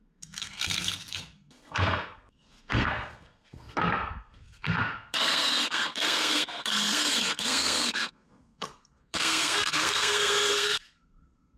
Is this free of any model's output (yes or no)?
no